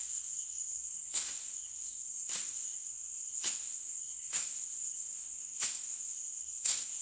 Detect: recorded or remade remade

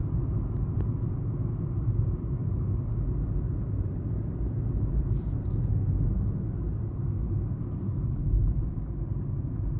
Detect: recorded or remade recorded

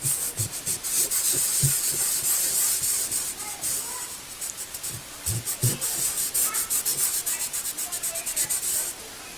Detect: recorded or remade recorded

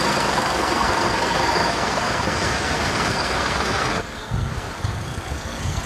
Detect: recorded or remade remade